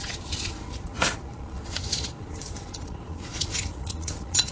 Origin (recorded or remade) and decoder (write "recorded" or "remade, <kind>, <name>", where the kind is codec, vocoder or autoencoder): remade, vocoder, Vocos